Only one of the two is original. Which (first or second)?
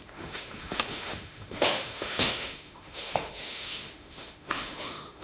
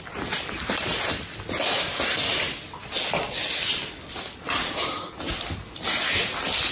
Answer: second